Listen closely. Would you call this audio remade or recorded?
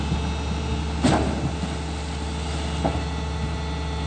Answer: recorded